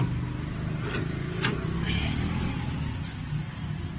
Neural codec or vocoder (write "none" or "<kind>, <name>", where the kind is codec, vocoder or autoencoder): none